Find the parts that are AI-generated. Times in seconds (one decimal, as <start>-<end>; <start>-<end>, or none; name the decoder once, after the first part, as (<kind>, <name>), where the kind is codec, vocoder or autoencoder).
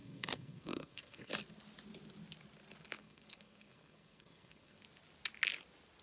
0.0-1.3 (codec, SNAC); 3.0-4.8